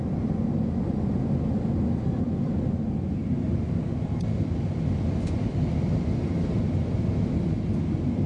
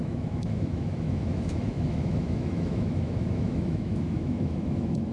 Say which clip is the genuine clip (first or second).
first